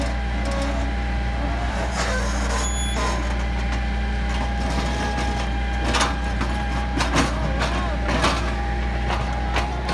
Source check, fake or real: real